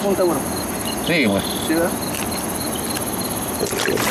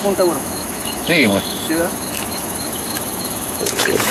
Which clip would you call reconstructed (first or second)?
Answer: second